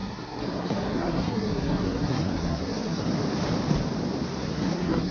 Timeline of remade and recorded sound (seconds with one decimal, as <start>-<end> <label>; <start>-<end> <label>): 0.0-3.1 remade; 3.1-4.4 recorded; 4.4-5.1 remade